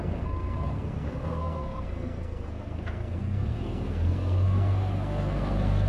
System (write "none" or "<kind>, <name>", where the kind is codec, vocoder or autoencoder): codec, SNAC